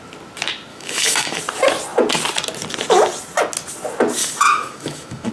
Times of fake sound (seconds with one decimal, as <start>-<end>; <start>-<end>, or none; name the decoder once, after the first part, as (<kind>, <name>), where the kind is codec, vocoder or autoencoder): 0.7-1.4 (autoencoder, DAC-VAE); 4.2-5.3